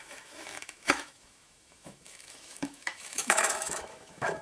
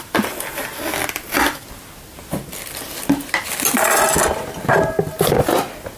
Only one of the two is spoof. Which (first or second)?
first